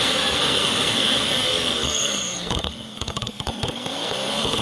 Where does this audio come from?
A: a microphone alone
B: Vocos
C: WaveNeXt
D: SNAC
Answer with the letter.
D